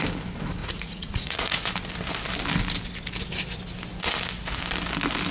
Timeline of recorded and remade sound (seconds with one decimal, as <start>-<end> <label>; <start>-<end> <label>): 0.0-0.6 recorded; 0.6-1.7 remade; 1.7-5.3 recorded